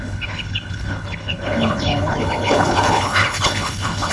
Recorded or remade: remade